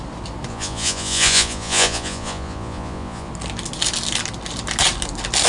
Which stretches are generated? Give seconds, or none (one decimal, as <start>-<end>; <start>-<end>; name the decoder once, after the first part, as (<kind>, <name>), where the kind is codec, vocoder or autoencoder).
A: 0.5-3.3 (vocoder, Vocos)